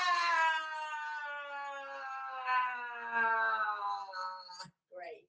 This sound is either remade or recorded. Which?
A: recorded